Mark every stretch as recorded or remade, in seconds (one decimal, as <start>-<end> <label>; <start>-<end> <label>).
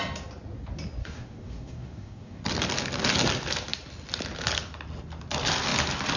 0.0-1.0 recorded; 1.0-2.4 remade; 2.4-6.2 recorded